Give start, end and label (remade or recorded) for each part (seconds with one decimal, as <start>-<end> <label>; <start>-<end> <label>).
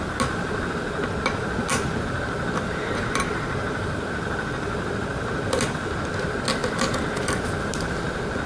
0.0-6.6 recorded; 6.6-7.7 remade; 7.7-8.5 recorded